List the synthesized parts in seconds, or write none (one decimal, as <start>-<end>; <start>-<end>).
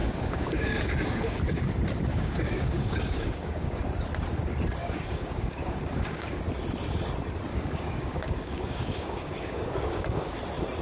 0.0-1.4; 2.1-3.8; 4.8-6.4; 7.5-10.4